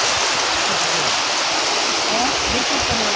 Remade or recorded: recorded